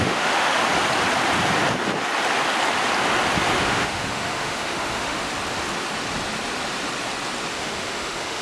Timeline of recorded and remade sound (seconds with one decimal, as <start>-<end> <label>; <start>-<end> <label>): 0.0-0.6 remade; 0.6-3.6 recorded; 3.6-5.3 remade; 5.3-7.5 recorded; 7.5-8.4 remade